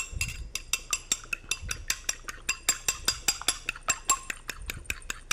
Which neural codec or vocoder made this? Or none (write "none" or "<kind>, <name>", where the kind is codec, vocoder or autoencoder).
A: none